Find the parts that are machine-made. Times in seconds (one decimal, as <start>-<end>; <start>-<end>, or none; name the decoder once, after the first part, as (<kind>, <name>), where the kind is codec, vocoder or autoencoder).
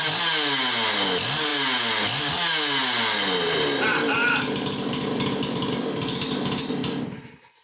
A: none